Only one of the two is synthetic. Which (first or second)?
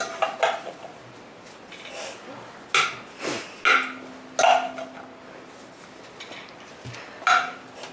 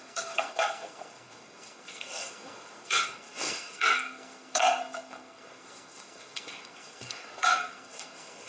second